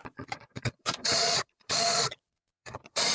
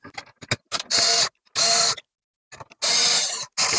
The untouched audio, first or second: second